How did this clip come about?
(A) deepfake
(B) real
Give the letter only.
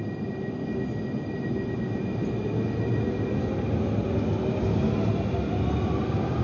B